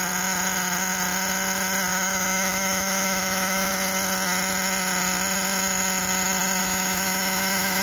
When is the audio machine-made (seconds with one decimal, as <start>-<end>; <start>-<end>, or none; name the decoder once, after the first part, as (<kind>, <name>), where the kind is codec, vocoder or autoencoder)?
1.9-3.7 (autoencoder, DAC-VAE); 6.6-7.8